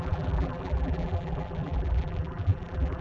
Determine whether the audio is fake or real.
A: fake